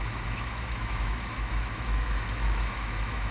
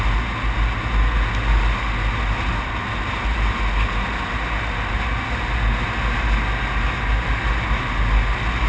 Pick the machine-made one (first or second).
first